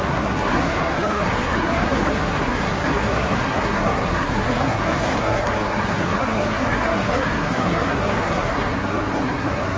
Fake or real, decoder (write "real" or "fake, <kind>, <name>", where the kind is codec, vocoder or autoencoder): fake, codec, SNAC